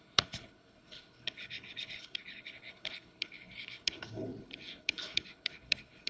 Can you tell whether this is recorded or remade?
remade